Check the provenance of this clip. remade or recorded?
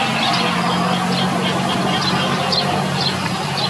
recorded